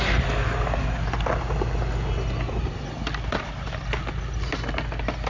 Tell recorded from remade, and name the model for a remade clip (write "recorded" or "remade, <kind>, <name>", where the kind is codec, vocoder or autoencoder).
recorded